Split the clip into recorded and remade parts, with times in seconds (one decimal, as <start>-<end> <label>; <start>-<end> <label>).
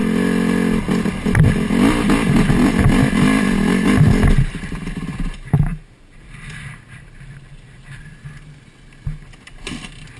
0.0-10.2 recorded